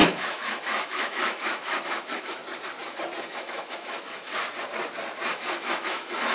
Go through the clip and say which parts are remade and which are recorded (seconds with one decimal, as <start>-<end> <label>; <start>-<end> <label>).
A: 0.0-2.4 remade; 2.4-3.2 recorded; 3.2-4.3 remade; 4.3-5.3 recorded; 5.3-6.3 remade